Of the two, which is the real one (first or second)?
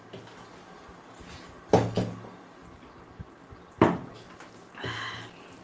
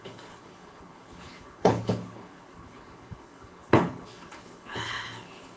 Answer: first